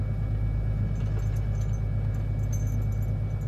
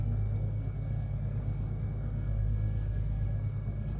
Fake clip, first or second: second